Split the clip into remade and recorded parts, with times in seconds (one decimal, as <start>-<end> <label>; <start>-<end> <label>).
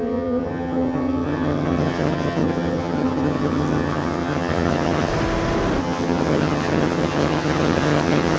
0.0-5.1 remade; 5.1-5.8 recorded; 5.8-8.4 remade